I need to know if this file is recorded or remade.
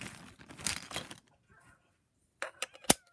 recorded